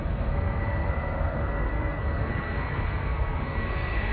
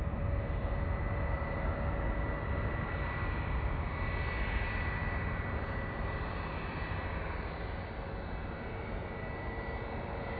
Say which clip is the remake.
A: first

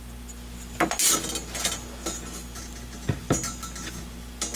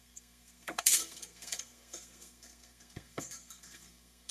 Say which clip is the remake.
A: second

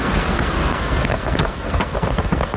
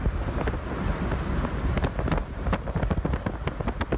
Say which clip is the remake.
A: first